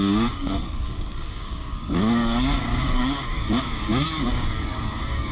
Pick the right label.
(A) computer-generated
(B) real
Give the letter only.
A